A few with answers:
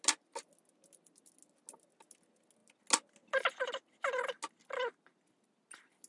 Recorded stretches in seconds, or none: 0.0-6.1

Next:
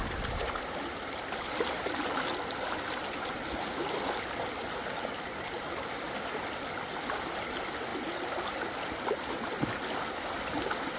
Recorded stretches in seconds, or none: 0.0-11.0